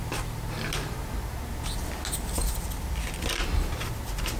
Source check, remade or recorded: recorded